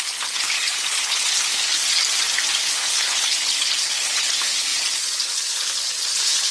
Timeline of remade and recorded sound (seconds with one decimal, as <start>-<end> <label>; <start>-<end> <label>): 0.0-1.8 remade; 1.8-2.6 recorded; 2.6-6.5 remade